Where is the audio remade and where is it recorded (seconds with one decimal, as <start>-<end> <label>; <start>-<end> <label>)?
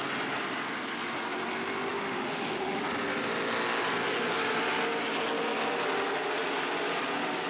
0.0-1.9 recorded; 1.9-2.8 remade; 2.8-7.5 recorded